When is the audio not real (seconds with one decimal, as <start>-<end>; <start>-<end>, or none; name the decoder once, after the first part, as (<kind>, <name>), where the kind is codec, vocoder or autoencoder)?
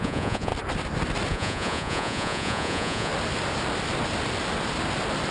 0.0-0.5 (vocoder, Vocos); 1.3-3.1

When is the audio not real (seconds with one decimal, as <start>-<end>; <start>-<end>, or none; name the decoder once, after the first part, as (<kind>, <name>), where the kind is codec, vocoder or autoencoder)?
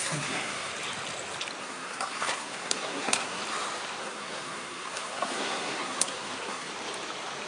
0.0-0.7 (codec, SNAC); 1.6-3.4; 4.0-6.7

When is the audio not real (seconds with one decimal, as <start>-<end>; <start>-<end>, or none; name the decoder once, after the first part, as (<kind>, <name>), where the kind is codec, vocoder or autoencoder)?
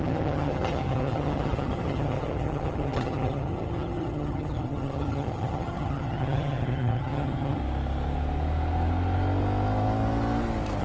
0.0-7.6 (vocoder, HiFi-GAN)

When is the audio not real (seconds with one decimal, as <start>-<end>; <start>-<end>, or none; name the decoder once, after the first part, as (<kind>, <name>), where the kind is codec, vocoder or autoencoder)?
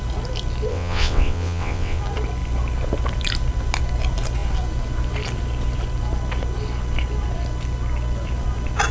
0.7-2.0 (vocoder, WaveNeXt)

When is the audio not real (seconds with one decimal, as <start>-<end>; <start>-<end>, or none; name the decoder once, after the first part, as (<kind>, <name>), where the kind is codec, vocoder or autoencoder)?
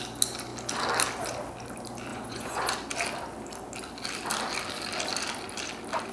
2.1-2.7 (vocoder, Vocos)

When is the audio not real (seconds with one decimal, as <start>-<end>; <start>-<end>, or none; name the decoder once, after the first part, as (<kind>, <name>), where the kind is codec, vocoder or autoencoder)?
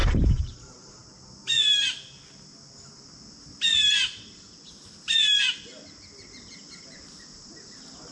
0.0-1.0 (vocoder, BigVGAN v2)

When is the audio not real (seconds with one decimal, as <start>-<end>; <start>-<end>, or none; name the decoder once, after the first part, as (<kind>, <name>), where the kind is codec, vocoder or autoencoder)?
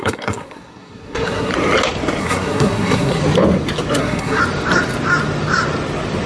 0.0-1.5 (codec, SNAC); 2.2-3.2; 4.0-4.4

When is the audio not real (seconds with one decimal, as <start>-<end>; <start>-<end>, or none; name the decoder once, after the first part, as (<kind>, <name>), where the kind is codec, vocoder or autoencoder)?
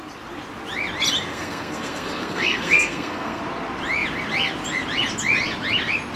1.3-3.4 (codec, SNAC)